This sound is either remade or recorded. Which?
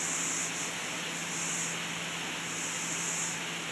recorded